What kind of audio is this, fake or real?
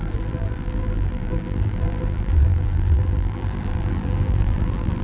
fake